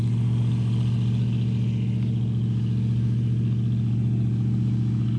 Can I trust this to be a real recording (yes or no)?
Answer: yes